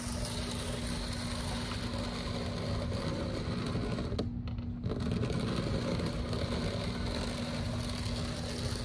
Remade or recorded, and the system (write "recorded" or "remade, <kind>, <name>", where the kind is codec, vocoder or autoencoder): recorded